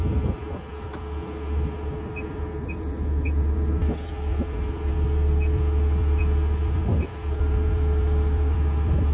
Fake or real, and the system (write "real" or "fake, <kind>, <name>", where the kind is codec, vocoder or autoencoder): real